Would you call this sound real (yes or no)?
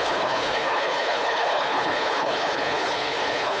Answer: no